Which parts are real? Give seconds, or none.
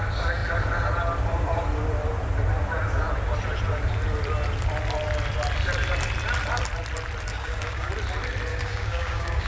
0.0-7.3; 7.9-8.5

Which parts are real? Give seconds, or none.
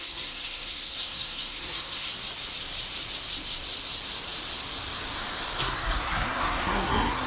2.1-5.6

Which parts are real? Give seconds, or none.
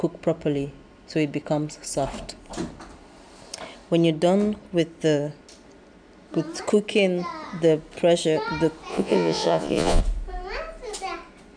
0.0-8.9; 10.0-11.6